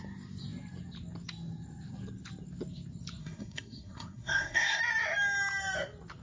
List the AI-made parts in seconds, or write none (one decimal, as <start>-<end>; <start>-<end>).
3.2-4.8